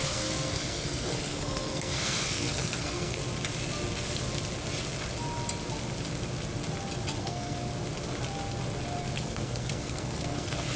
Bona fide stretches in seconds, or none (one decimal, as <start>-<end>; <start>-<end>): 3.2-7.2; 7.7-9.0